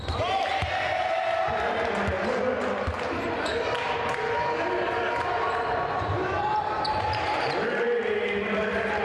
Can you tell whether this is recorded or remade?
recorded